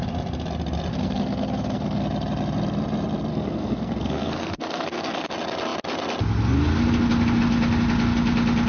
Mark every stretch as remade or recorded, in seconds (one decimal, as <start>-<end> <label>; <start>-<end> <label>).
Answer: 0.0-0.9 recorded; 0.9-2.0 remade; 2.0-3.3 recorded; 3.3-5.3 remade; 5.3-8.7 recorded